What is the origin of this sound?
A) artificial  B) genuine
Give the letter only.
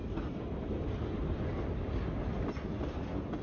B